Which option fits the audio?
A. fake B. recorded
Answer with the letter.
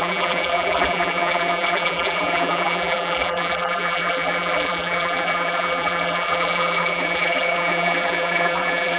A